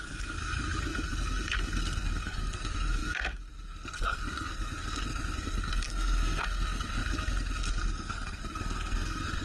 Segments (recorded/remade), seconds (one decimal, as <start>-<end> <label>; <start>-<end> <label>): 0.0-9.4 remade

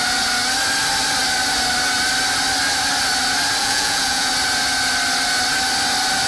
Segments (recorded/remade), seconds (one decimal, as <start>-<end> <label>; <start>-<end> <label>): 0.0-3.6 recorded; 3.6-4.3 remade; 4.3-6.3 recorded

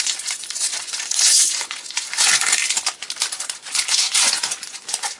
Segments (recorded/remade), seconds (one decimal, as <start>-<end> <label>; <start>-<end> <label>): 0.0-2.6 remade; 2.6-3.3 recorded; 3.3-5.2 remade